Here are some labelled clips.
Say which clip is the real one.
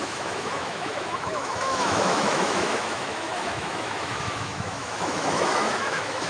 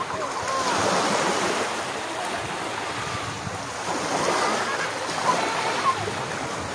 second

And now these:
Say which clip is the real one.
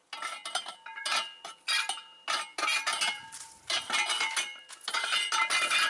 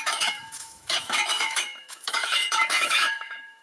first